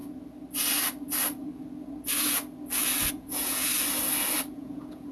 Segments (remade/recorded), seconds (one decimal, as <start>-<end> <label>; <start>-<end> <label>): 0.0-3.1 recorded; 3.1-3.7 remade; 3.7-4.5 recorded; 4.5-5.1 remade